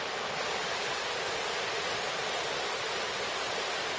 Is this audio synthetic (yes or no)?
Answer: no